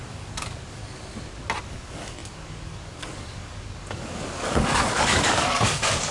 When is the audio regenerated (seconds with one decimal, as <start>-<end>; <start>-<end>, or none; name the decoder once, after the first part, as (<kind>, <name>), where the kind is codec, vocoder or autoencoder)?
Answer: 0.0-0.8 (codec, DAC); 1.6-6.1